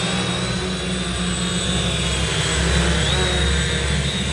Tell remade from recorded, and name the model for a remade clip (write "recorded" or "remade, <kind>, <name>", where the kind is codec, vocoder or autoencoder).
recorded